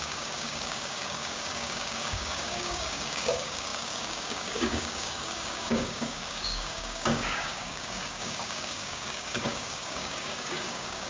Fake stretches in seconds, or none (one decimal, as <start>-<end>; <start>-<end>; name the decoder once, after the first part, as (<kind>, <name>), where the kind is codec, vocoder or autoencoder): 0.0-11.1 (codec, DAC)